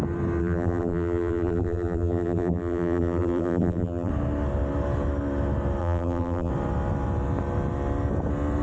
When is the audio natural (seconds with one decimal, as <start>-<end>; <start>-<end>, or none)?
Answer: 0.0-0.4; 4.1-5.8; 6.5-8.6